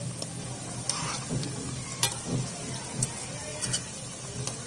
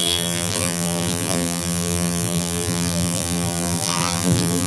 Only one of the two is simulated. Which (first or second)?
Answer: second